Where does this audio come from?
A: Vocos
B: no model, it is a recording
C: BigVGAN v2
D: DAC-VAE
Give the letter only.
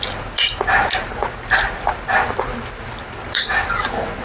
B